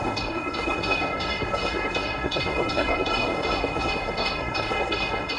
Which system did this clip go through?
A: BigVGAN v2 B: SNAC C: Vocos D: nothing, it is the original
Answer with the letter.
B